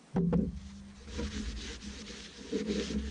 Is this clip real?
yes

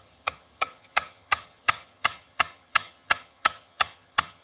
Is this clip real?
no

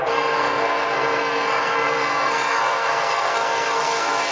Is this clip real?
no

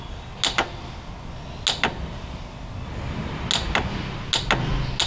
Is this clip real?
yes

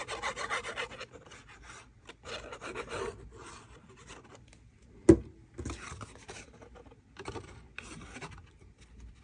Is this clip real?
yes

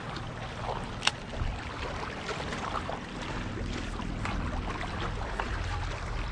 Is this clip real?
yes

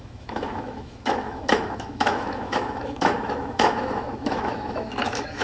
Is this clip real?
no